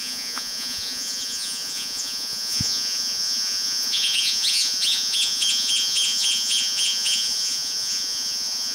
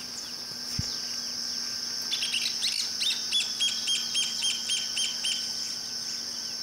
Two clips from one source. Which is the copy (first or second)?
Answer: first